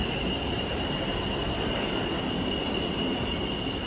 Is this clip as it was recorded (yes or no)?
yes